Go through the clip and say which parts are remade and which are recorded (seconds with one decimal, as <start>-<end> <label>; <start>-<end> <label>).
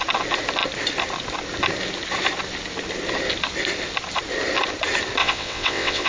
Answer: 0.0-5.2 recorded; 5.2-6.1 remade